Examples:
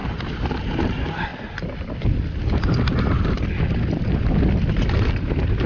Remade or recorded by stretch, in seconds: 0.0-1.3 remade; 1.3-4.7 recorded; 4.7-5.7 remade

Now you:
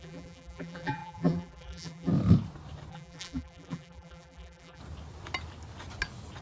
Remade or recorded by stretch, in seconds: 0.0-2.1 remade; 2.1-2.9 recorded; 2.9-4.8 remade; 4.8-6.4 recorded